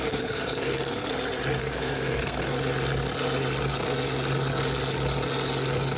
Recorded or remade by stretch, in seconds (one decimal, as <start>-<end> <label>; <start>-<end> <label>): 0.0-1.1 remade; 1.1-1.6 recorded; 1.6-2.4 remade; 2.4-6.0 recorded